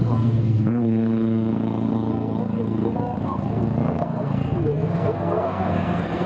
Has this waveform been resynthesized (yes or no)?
yes